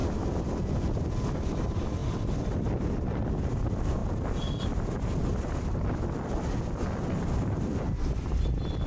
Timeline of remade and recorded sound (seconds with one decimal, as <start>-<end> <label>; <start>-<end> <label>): 0.0-8.9 recorded